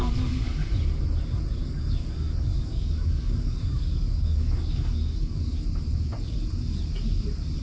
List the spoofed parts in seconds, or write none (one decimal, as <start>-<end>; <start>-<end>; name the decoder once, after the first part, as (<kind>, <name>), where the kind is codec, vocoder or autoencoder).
0.0-0.6 (codec, DAC); 1.6-5.5